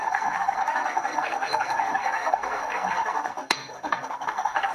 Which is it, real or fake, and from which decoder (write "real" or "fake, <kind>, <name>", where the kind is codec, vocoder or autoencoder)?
fake, codec, SNAC